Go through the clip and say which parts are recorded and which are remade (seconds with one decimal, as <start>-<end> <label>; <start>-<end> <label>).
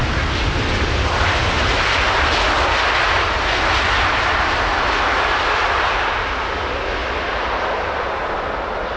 0.0-9.0 recorded